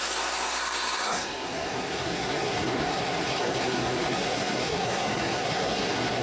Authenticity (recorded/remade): remade